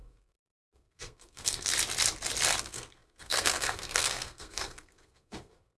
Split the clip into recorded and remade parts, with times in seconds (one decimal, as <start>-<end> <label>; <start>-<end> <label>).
0.0-1.7 remade; 1.7-2.6 recorded; 2.6-5.8 remade